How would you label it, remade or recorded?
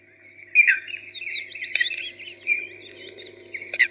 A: recorded